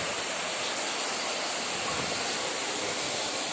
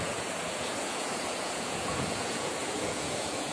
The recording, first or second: first